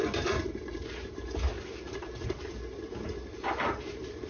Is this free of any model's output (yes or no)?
no